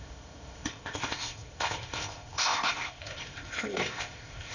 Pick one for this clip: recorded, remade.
remade